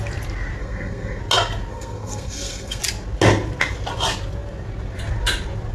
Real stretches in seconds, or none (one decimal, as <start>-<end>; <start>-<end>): 0.0-0.6; 1.2-1.7; 2.8-5.7